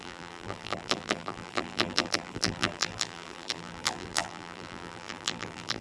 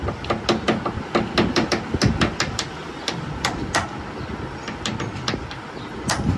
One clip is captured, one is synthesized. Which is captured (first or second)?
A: second